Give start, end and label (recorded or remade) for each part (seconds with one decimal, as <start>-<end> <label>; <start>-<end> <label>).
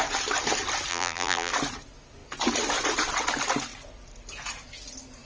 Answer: 0.0-0.9 recorded; 0.9-1.5 remade; 1.5-5.2 recorded